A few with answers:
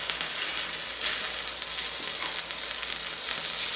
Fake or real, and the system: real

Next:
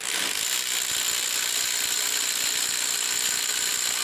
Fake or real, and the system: real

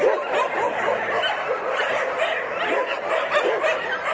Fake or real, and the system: real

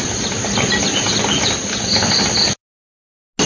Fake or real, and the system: real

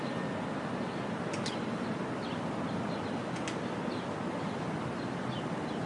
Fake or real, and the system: real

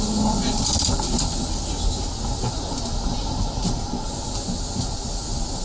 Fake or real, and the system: real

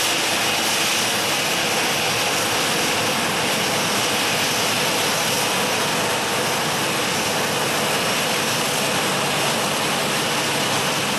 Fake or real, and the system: real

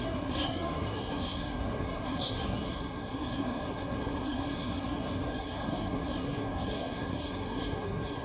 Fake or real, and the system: fake, codec, SNAC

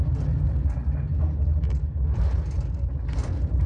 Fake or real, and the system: real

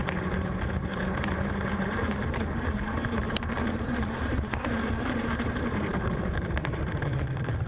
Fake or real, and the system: fake, vocoder, BigVGAN v2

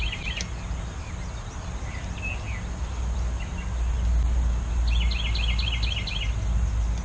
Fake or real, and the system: real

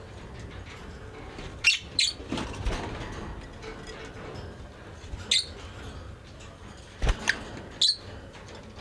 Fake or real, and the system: real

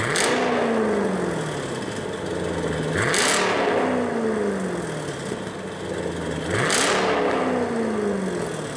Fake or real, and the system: real